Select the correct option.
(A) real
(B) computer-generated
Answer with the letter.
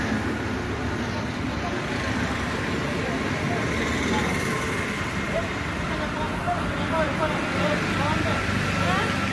A